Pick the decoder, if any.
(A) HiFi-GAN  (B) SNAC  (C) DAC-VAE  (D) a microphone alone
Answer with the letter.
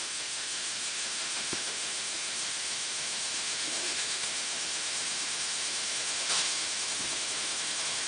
C